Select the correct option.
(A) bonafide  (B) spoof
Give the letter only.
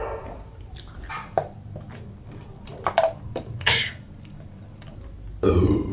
B